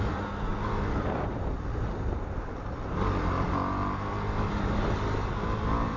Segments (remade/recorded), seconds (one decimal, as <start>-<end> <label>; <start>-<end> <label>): 0.0-6.0 recorded